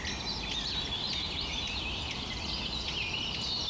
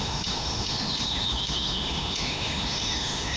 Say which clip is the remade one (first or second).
second